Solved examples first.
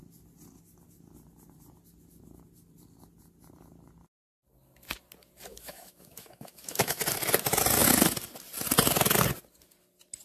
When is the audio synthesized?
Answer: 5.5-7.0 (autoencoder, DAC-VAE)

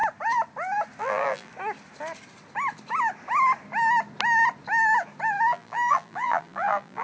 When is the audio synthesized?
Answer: 1.0-1.5 (vocoder, BigVGAN v2); 5.5-7.0

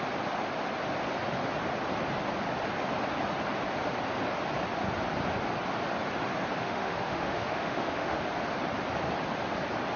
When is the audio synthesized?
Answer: 6.6-8.2 (autoencoder, DAC-VAE)